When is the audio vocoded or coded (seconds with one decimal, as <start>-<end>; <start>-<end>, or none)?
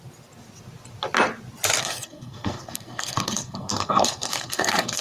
1.8-5.0